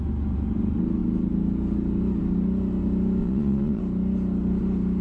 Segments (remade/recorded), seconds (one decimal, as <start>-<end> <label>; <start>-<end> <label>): 0.0-3.2 recorded; 3.2-3.8 remade; 3.8-5.0 recorded